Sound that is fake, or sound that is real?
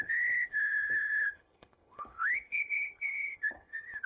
fake